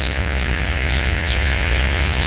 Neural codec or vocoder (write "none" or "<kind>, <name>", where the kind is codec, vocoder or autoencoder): vocoder, Vocos